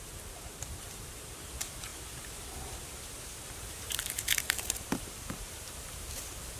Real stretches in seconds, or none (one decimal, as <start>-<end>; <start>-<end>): 1.9-3.7